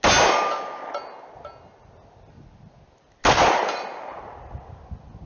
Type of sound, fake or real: real